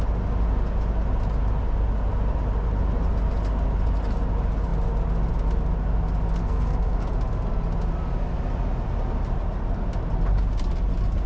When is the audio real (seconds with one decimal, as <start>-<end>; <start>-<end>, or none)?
0.0-6.4; 7.1-11.3